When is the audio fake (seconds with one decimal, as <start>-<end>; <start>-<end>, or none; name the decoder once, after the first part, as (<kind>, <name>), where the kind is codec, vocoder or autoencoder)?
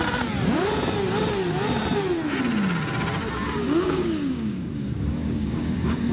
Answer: 3.6-6.1 (codec, DAC)